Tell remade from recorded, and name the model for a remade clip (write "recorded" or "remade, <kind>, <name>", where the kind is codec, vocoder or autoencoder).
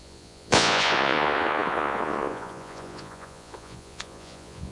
remade, vocoder, Vocos